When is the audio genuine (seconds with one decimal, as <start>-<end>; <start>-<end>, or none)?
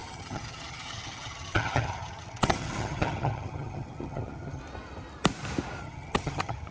4.6-5.8